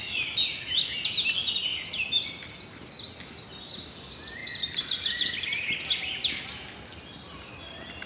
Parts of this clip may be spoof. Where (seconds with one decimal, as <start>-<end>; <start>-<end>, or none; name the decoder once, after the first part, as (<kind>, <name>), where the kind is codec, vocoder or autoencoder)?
none